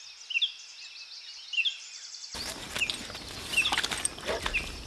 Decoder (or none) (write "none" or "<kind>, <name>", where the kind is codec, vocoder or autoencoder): none